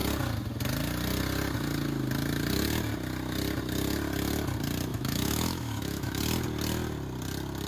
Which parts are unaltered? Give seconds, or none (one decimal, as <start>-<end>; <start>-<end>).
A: 0.0-4.9; 6.2-7.7